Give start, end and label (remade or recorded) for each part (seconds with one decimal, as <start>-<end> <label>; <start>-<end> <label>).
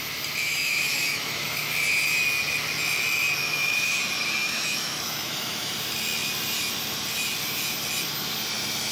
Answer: 0.0-0.5 recorded; 0.5-1.7 remade; 1.7-3.4 recorded; 3.4-4.0 remade; 4.0-4.4 recorded; 4.4-5.7 remade; 5.7-8.9 recorded